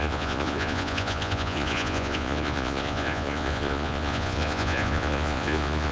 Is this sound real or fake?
fake